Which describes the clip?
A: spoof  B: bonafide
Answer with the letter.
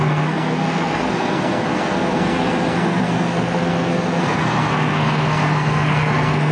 A